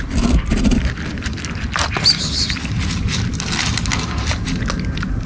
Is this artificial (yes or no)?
no